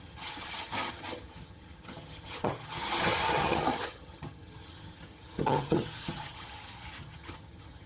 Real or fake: fake